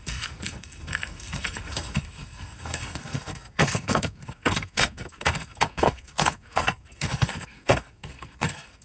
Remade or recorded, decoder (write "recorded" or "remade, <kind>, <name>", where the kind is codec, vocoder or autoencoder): remade, codec, SNAC